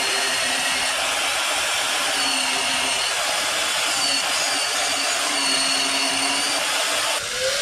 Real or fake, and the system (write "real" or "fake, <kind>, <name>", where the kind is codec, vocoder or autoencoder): real